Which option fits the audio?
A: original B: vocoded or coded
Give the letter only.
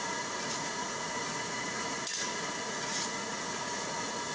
B